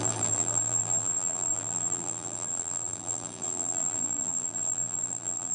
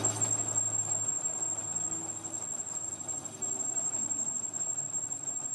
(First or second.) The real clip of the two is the second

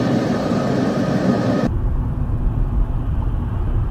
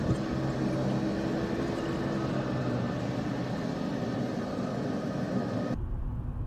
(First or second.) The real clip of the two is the second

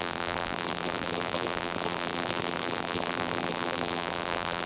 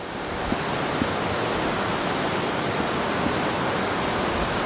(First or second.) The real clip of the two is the second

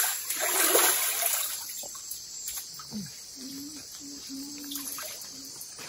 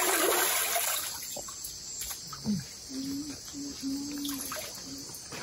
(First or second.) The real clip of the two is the second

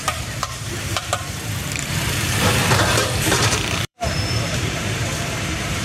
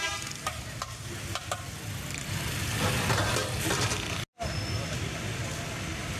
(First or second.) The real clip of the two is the second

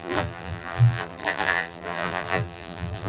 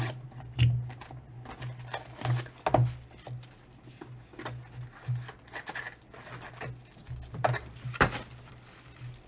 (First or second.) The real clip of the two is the second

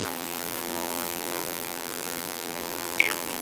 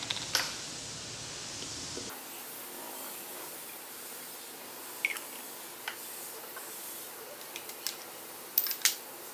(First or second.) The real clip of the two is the second